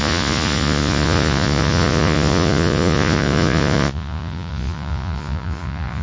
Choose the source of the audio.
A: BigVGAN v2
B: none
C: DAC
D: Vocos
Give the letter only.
D